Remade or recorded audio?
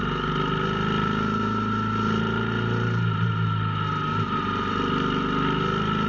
recorded